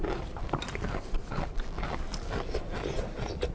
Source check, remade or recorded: recorded